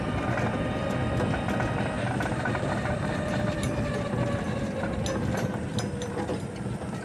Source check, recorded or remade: recorded